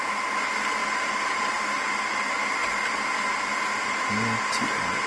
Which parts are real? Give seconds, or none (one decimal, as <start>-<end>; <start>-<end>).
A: 0.0-0.8; 1.6-2.6; 3.3-5.1